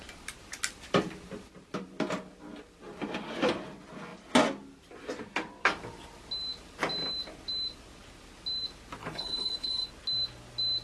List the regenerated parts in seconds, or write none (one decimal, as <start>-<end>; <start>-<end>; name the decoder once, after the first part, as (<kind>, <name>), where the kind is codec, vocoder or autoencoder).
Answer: 9.0-9.9 (codec, HILCodec)